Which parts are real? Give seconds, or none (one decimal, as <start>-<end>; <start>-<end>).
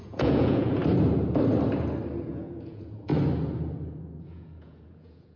0.8-2.3; 3.1-4.0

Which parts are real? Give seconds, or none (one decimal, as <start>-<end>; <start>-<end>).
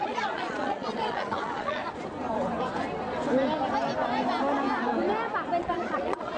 1.8-5.6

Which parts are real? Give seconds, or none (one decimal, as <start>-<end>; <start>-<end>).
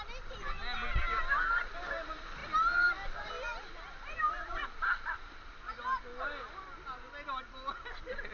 0.0-8.3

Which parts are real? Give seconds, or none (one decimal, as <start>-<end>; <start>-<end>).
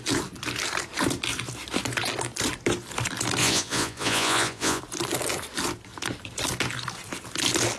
0.0-3.4; 4.8-7.8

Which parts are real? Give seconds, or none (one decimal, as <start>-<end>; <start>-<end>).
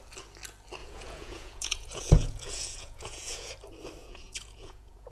0.0-0.8; 3.5-4.0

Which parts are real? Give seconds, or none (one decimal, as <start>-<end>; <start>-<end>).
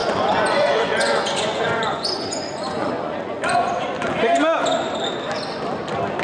3.7-6.2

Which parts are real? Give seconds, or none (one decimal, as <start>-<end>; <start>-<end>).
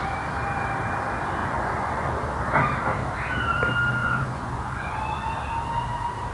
0.0-1.4; 2.1-4.0; 5.3-6.3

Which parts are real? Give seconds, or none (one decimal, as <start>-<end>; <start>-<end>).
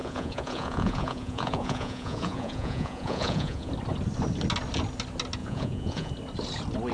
3.7-5.4; 6.1-6.9